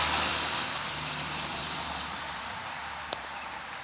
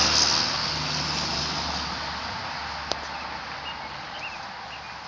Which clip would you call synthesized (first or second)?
first